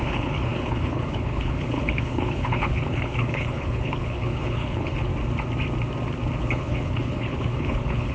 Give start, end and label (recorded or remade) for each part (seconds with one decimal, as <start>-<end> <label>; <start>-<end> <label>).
0.0-5.1 remade; 5.1-6.4 recorded; 6.4-8.1 remade